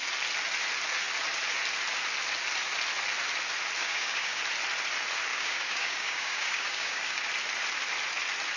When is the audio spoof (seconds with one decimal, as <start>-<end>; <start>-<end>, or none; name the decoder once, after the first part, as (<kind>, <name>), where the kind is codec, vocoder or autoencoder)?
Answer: 3.8-4.4 (codec, DAC); 5.3-7.3

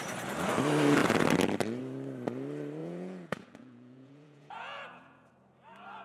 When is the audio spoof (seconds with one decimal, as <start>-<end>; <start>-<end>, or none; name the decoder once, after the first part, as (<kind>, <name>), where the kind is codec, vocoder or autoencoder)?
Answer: 2.8-5.3 (vocoder, Vocos)

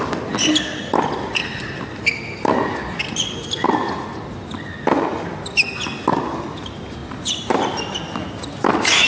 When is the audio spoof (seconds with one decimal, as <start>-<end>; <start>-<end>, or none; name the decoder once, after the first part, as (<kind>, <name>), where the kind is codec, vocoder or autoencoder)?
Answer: none

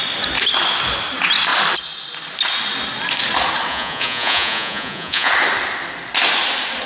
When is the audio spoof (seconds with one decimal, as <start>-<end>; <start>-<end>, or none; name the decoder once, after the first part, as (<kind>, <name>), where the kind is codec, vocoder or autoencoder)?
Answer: 3.7-5.3 (vocoder, Vocos)

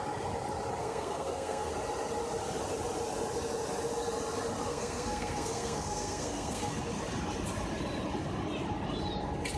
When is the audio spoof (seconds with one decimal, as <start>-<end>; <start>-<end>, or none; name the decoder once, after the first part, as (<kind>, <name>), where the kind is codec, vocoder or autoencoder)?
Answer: 0.8-1.7 (codec, SNAC); 4.7-6.7

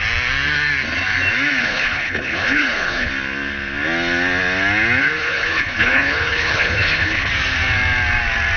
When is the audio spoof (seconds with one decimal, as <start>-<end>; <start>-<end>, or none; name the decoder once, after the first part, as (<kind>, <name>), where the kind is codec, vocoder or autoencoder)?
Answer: 1.6-3.1 (codec, HILCodec); 5.0-7.3